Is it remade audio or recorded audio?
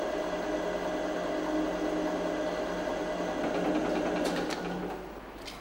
recorded